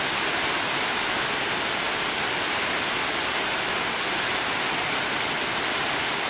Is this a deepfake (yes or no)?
no